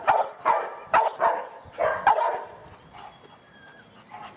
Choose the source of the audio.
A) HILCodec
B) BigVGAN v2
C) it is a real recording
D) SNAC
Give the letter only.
C